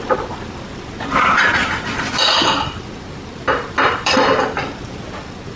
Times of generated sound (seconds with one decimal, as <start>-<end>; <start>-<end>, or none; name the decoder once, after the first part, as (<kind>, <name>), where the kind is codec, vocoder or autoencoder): 1.6-4.4 (vocoder, BigVGAN v2)